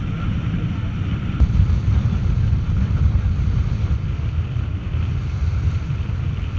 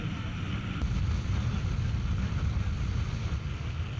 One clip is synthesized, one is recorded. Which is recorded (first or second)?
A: second